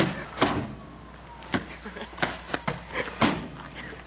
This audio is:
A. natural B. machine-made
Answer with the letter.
A